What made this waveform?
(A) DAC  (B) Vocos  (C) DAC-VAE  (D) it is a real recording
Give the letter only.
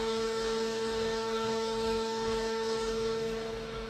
A